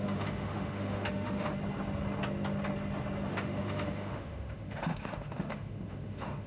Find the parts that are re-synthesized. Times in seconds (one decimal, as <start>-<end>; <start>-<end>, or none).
0.0-1.5; 3.3-6.5